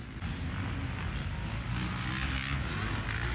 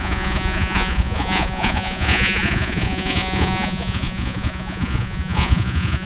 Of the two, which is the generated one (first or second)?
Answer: second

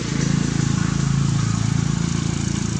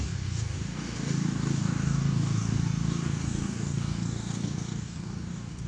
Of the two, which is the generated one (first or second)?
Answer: second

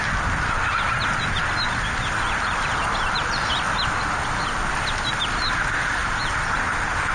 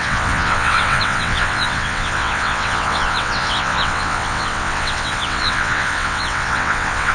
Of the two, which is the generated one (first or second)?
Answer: second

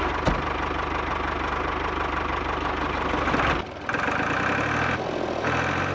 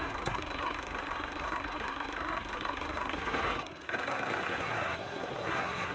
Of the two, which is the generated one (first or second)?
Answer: second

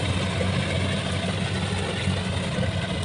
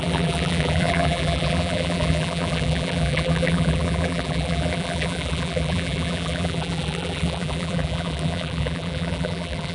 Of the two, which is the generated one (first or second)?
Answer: second